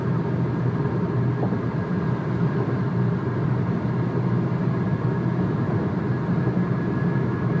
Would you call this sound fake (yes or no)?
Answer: no